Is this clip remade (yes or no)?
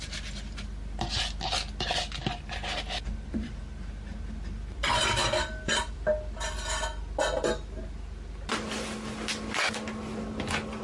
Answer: no